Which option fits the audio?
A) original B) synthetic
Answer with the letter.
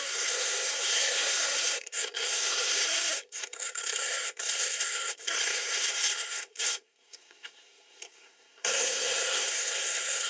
B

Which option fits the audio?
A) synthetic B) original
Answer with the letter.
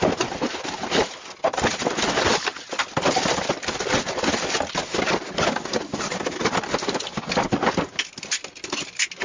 B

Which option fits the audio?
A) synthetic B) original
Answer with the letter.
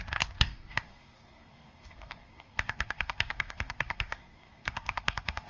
A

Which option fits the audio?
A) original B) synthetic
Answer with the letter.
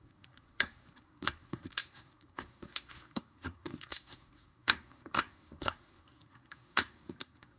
B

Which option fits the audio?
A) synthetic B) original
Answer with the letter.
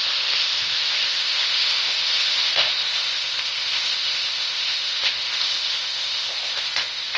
A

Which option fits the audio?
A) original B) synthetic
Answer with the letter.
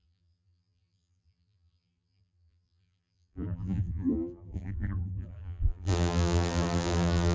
B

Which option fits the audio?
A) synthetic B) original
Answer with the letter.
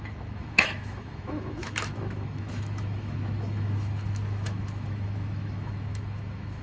A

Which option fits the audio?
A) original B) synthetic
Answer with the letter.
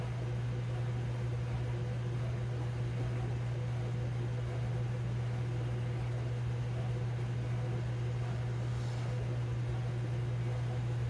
A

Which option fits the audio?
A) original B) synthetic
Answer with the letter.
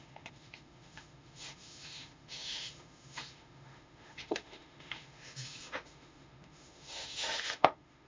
B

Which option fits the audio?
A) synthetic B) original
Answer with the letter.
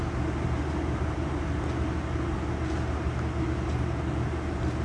B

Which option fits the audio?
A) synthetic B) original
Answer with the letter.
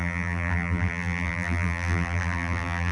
A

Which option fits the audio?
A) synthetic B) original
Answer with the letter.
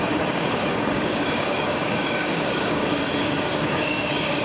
A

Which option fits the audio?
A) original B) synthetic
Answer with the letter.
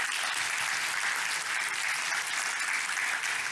A